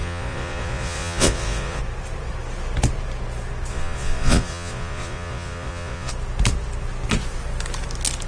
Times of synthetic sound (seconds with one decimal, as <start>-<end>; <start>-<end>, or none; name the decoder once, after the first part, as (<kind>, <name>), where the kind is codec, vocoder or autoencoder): 0.0-1.8 (vocoder, Vocos); 3.7-6.1